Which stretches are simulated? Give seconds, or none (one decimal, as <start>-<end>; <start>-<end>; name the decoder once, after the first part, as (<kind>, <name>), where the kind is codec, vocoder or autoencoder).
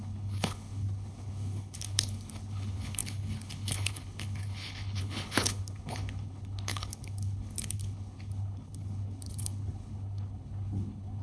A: 0.0-11.2 (codec, HILCodec)